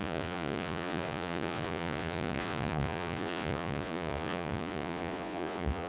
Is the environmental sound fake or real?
fake